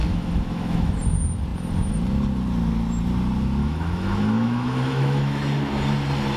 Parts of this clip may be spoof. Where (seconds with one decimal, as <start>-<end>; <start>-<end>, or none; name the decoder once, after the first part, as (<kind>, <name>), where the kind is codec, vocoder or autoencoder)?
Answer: 0.0-1.0 (autoencoder, DAC-VAE); 3.6-5.4